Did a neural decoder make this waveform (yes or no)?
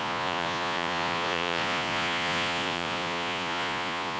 yes